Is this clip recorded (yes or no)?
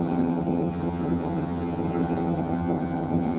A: no